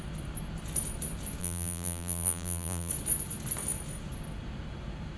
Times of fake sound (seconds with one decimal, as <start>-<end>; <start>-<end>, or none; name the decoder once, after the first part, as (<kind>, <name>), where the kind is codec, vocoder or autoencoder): 1.4-2.9 (vocoder, BigVGAN v2)